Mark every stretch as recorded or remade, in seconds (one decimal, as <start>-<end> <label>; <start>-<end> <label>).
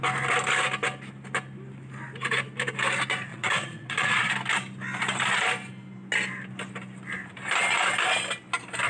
0.0-3.3 recorded; 3.3-4.3 remade; 4.3-8.9 recorded